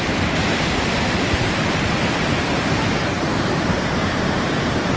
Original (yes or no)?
no